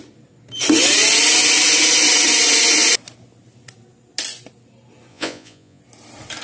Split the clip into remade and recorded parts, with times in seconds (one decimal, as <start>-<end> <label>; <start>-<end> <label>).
0.0-5.1 recorded; 5.1-5.8 remade; 5.8-6.4 recorded